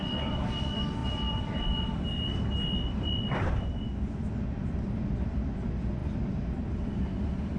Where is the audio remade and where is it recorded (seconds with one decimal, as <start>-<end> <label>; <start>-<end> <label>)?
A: 0.0-1.0 recorded; 1.0-2.1 remade; 2.1-7.6 recorded